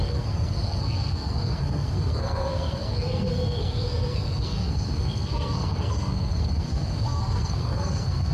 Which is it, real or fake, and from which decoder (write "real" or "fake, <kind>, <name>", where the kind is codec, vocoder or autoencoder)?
fake, codec, SNAC